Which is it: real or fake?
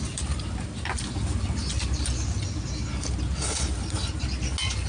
real